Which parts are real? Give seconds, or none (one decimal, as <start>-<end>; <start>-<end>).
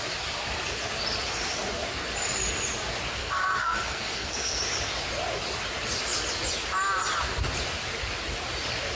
0.0-3.2; 4.6-8.9